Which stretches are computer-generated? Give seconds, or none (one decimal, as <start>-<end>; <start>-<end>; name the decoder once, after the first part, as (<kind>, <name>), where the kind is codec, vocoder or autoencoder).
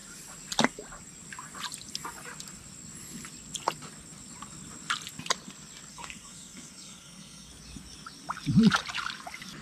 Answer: 5.9-7.5 (codec, SNAC)